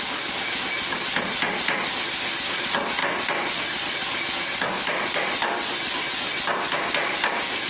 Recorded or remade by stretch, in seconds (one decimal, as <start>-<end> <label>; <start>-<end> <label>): 0.0-3.0 recorded; 3.0-6.9 remade; 6.9-7.7 recorded